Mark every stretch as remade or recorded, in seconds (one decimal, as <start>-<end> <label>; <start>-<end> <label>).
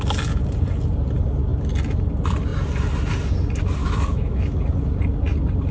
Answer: 0.0-3.8 recorded; 3.8-4.6 remade; 4.6-5.7 recorded